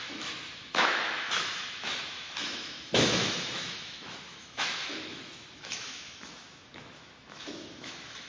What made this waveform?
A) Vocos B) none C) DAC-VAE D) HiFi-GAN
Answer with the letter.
C